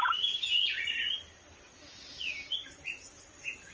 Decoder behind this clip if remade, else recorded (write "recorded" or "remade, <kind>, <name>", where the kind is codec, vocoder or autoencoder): recorded